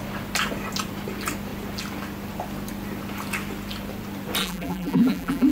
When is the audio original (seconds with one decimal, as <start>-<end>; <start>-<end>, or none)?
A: 0.0-4.4

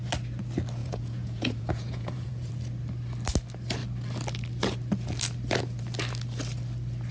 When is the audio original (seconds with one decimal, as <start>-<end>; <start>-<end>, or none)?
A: 0.0-0.8; 2.5-7.1

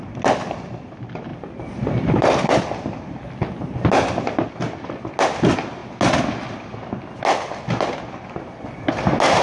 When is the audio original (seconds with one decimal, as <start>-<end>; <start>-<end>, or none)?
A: 0.0-1.3; 2.6-9.4

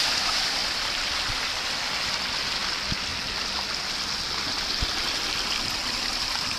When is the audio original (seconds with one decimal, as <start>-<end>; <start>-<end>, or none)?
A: 0.0-0.6; 1.3-6.6

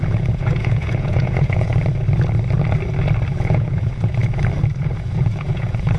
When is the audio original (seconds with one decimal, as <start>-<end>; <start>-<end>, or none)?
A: 1.7-3.4; 4.2-4.8

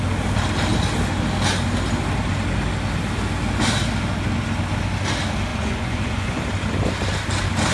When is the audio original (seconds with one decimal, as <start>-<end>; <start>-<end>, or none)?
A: 0.0-5.5; 6.4-7.7

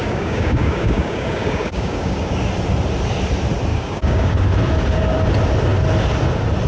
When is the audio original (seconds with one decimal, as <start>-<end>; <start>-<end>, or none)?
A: 2.4-3.7; 4.3-6.7

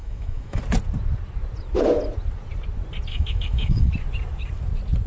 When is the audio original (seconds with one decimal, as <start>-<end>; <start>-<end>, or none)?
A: 0.6-3.1; 3.9-5.1